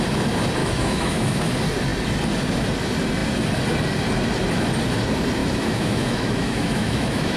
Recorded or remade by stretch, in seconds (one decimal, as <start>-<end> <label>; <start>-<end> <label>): 0.0-0.6 recorded; 0.6-1.4 remade; 1.4-5.4 recorded; 5.4-7.4 remade